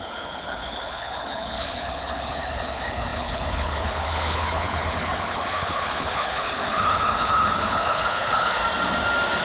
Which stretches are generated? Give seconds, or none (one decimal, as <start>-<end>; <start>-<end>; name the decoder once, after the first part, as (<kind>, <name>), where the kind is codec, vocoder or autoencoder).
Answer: 0.0-8.6 (codec, HILCodec)